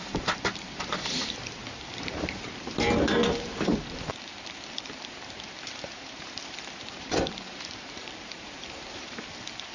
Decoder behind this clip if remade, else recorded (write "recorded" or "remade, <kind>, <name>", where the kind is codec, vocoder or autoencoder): remade, vocoder, BigVGAN v2